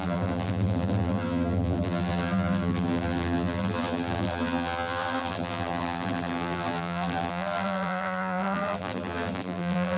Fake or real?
fake